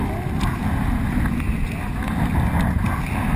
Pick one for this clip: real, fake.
real